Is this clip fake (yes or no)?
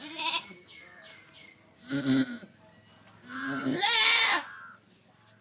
no